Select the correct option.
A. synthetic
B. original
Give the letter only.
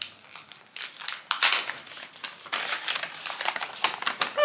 B